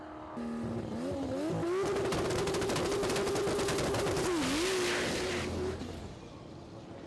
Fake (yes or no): no